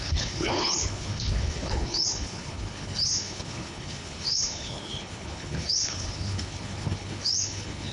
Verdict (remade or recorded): remade